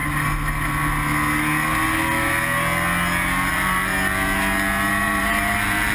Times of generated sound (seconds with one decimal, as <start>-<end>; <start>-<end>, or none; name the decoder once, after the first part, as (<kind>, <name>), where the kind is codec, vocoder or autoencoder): 3.5-3.9 (vocoder, BigVGAN v2); 4.9-5.9